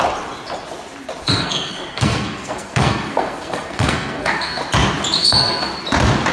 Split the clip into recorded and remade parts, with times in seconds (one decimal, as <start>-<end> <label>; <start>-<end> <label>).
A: 0.0-1.2 recorded; 1.2-4.6 remade; 4.6-5.2 recorded; 5.2-5.7 remade; 5.7-6.3 recorded

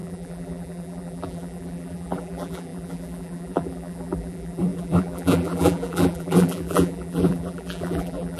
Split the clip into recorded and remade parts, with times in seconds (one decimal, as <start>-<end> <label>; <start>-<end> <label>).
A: 0.0-8.4 remade